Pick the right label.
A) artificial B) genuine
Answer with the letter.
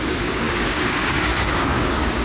A